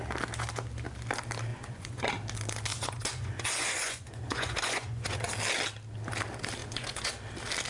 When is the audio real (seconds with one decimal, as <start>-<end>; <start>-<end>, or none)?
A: 0.0-1.5; 2.1-2.7; 5.3-6.6; 7.1-7.7